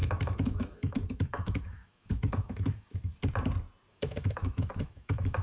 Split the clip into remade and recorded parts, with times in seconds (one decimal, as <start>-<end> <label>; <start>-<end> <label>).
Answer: 0.0-3.1 remade; 3.1-3.9 recorded; 3.9-5.4 remade